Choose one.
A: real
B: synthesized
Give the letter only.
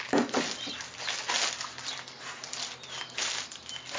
A